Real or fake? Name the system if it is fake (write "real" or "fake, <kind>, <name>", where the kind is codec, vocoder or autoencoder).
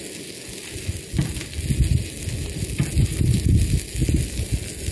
real